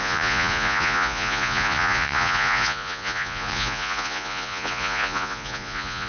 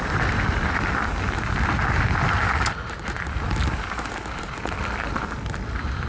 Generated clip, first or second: first